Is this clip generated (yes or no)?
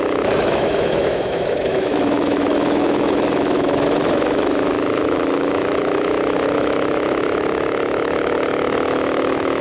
yes